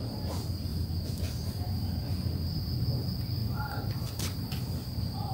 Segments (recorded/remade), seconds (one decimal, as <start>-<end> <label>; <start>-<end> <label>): 0.0-0.7 recorded; 0.7-2.6 remade; 2.6-3.4 recorded; 3.4-4.4 remade; 4.4-5.3 recorded